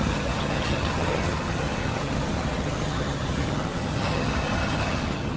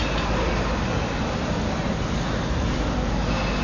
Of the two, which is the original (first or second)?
second